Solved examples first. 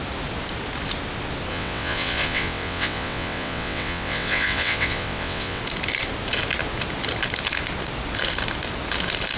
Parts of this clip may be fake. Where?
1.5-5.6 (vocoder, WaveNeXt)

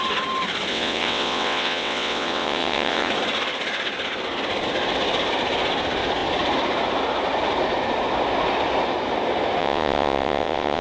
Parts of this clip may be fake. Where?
0.7-3.1 (vocoder, WaveNeXt); 9.6-10.8

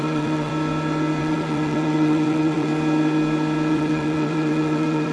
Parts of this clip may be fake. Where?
0.0-0.5 (vocoder, WaveNeXt); 1.2-2.7; 3.7-5.1

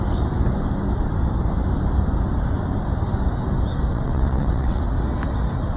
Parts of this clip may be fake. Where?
3.9-4.8 (vocoder, WaveNeXt)

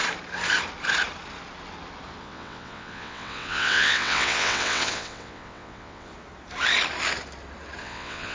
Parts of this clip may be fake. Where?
2.2-6.1 (vocoder, WaveNeXt); 7.8-8.3

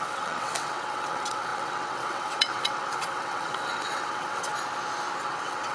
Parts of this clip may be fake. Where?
0.0-4.5 (vocoder, WaveNeXt); 5.2-5.7

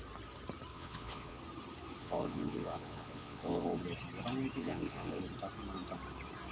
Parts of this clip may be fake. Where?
0.7-1.4 (vocoder, WaveNeXt); 2.0-3.8; 4.6-5.2